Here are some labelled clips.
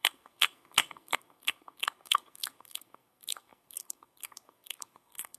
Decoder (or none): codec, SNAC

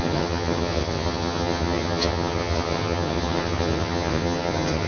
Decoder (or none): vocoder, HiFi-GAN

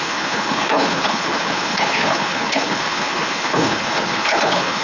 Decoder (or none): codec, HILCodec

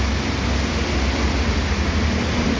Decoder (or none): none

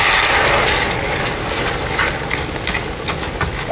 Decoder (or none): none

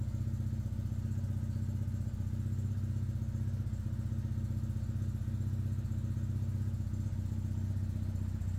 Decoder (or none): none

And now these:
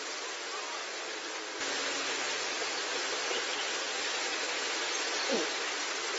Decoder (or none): none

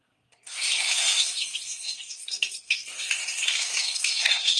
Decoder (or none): codec, SNAC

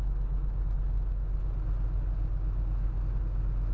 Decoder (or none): none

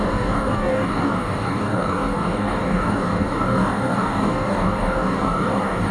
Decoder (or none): codec, DAC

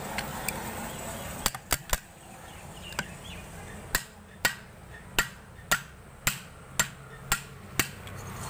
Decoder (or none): none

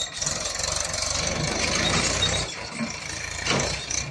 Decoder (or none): none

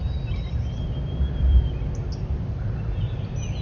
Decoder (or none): none